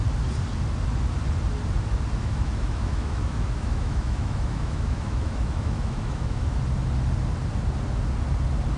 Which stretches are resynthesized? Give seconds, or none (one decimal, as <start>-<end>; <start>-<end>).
2.2-6.6